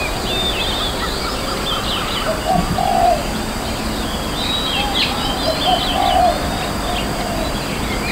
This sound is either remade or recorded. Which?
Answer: recorded